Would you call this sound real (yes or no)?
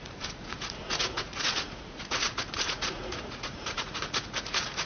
no